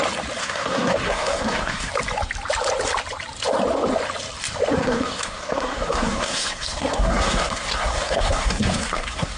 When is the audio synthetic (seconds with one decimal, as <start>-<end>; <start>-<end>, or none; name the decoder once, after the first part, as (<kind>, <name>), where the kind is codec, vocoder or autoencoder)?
0.4-1.9 (codec, SNAC); 4.7-9.4